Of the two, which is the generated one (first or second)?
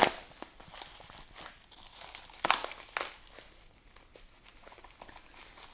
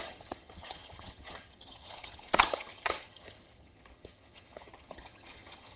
second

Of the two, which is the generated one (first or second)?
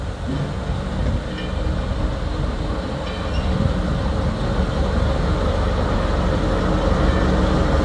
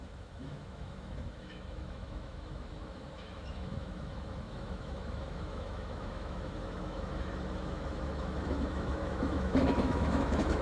second